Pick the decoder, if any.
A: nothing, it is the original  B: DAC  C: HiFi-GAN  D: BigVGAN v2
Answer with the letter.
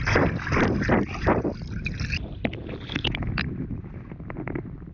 A